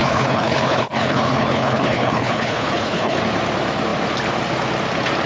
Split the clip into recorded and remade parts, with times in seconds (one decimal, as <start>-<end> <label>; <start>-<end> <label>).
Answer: 0.0-3.2 remade; 3.2-5.3 recorded